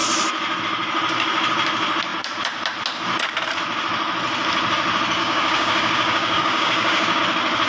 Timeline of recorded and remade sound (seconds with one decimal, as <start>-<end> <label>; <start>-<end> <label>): 0.0-5.2 recorded; 5.2-7.2 remade; 7.2-7.7 recorded